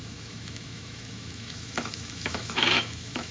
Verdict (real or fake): fake